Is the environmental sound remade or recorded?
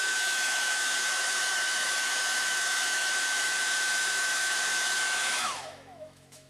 remade